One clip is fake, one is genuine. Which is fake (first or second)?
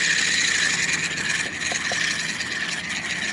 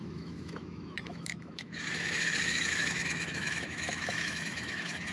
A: second